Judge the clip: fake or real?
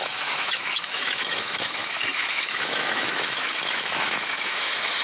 fake